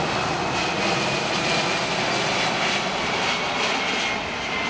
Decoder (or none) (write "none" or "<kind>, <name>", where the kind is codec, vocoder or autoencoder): none